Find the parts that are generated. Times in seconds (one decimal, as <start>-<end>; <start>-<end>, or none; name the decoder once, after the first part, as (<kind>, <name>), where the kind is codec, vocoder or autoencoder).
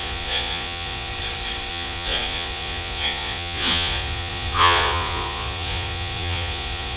0.0-1.1 (vocoder, Vocos); 1.7-7.0